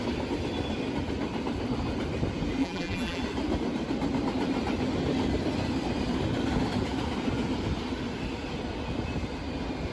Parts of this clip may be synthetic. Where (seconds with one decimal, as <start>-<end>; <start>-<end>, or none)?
2.6-3.2